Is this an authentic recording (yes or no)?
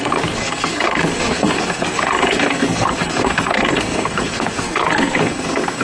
no